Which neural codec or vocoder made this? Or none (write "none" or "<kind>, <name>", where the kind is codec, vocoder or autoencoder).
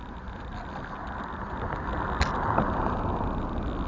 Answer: none